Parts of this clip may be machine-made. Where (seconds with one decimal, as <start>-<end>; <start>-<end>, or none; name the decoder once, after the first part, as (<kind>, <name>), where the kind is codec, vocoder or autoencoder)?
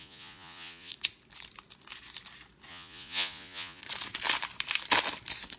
0.0-0.9 (vocoder, Vocos); 2.7-3.8